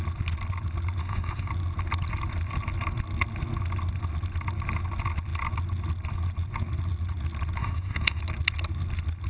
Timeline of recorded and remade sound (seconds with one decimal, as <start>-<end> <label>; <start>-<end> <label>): 0.0-1.0 recorded; 1.0-1.5 remade; 1.5-7.6 recorded; 7.6-8.2 remade; 8.2-9.3 recorded